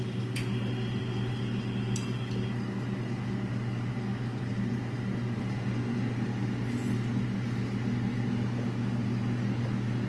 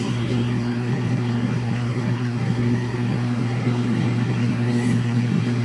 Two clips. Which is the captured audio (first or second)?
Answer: first